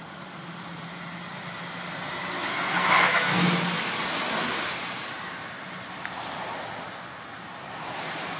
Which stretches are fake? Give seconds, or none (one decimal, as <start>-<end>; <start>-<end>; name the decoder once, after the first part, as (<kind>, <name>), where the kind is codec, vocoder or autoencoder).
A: 2.5-3.4 (codec, SNAC)